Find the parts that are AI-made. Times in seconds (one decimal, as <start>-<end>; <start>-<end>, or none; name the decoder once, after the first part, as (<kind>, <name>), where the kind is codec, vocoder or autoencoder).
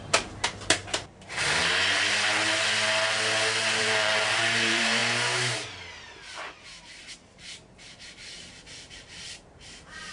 0.0-0.8 (vocoder, BigVGAN v2); 3.8-5.0; 7.1-10.1